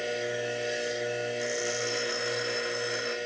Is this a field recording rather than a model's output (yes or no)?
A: yes